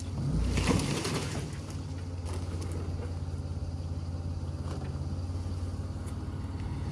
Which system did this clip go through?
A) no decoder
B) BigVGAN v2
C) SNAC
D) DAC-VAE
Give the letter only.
A